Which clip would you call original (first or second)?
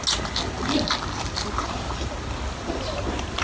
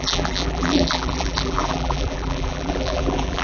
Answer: first